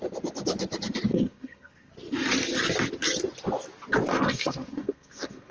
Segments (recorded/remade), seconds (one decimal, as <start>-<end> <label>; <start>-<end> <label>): 0.0-1.1 recorded; 1.1-1.9 remade; 1.9-4.1 recorded; 4.1-5.5 remade